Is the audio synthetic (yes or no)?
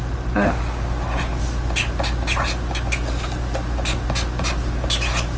no